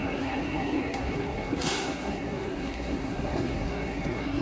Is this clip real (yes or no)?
no